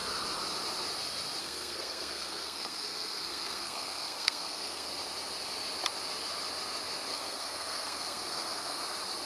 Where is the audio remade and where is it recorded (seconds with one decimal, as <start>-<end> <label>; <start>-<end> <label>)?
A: 0.0-1.4 recorded; 1.4-4.9 remade; 4.9-7.1 recorded; 7.1-8.8 remade; 8.8-9.3 recorded